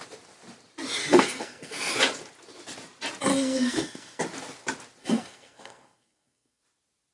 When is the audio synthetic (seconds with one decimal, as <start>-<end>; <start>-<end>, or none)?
1.0-1.9; 3.3-4.2; 5.0-6.6